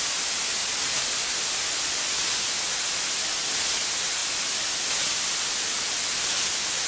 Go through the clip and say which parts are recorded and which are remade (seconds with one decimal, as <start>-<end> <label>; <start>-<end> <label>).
0.0-6.9 recorded

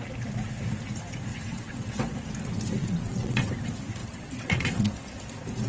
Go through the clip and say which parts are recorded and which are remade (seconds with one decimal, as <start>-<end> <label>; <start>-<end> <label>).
0.0-1.3 recorded; 1.3-2.1 remade; 2.1-2.8 recorded; 2.8-3.5 remade; 3.5-4.0 recorded; 4.0-4.9 remade; 4.9-5.7 recorded

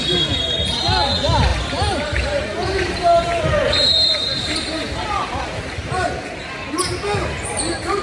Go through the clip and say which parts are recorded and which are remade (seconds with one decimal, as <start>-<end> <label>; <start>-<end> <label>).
0.0-1.5 recorded; 1.5-5.9 remade; 5.9-8.0 recorded

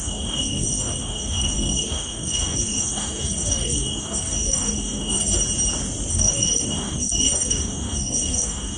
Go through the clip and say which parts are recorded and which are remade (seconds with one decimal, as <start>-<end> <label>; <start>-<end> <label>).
0.0-5.4 remade; 5.4-6.1 recorded; 6.1-8.8 remade